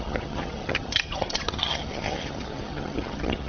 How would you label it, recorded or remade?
remade